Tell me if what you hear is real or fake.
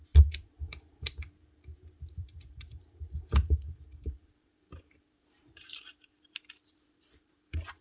fake